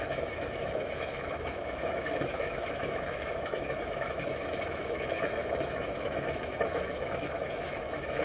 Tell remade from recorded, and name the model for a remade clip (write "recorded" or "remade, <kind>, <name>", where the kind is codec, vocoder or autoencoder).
remade, autoencoder, DAC-VAE